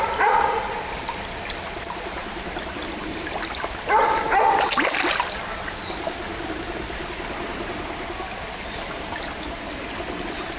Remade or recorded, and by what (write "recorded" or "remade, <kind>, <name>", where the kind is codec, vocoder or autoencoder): recorded